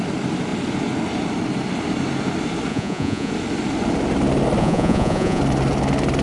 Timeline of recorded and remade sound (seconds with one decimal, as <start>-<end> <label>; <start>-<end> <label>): 0.0-2.7 recorded; 2.7-3.3 remade; 3.3-4.6 recorded; 4.6-5.4 remade; 5.4-6.2 recorded